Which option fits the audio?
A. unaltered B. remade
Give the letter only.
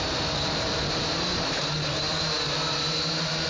B